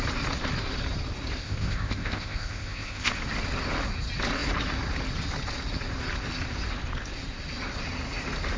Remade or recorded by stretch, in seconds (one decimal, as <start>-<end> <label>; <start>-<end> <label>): 0.0-1.4 recorded; 1.4-3.1 remade; 3.1-8.6 recorded